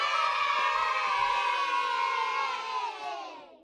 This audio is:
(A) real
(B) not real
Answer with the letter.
A